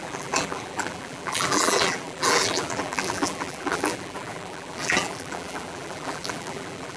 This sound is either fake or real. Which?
fake